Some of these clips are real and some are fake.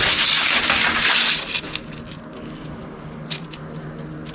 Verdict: real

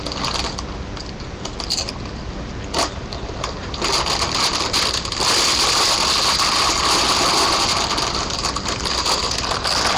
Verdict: real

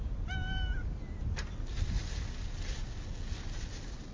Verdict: real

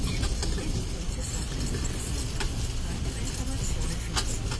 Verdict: real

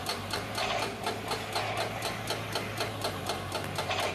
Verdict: real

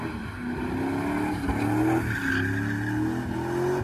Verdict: real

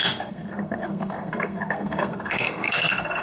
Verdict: fake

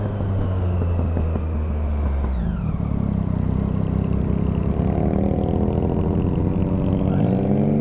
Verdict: real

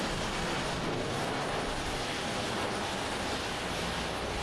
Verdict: real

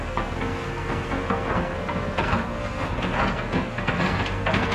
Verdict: fake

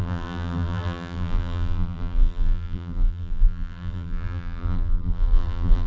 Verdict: fake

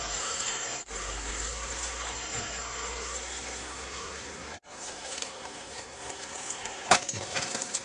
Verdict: fake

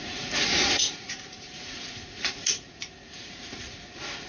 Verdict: fake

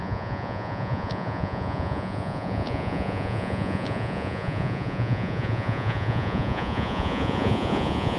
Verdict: fake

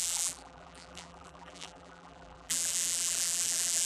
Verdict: fake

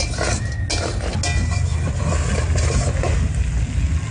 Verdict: real